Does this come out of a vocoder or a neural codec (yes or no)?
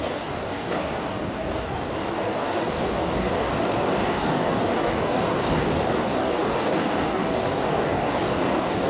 yes